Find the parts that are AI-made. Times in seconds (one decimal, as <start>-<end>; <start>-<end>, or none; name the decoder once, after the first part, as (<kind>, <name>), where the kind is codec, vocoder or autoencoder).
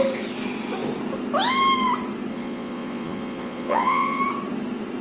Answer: 2.3-4.2 (vocoder, Vocos)